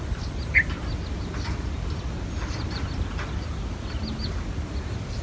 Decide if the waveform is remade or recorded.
recorded